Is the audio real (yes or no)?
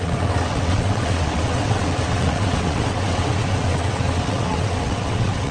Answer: no